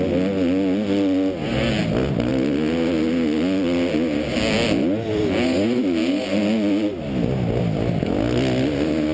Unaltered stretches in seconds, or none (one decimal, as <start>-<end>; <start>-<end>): 0.0-9.1